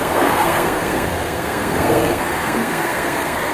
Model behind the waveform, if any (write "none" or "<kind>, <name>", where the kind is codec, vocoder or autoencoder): codec, SNAC